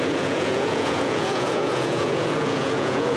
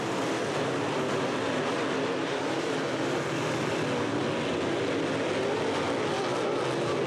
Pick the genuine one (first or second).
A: second